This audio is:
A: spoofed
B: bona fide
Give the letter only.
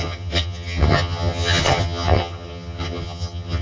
A